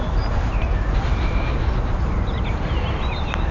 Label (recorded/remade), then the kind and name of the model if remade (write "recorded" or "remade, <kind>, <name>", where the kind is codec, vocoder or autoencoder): remade, vocoder, BigVGAN v2